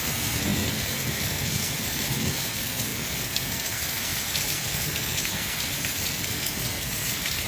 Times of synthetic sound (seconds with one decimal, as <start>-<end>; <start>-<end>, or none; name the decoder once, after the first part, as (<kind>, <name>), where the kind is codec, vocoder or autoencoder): 0.0-7.5 (codec, SNAC)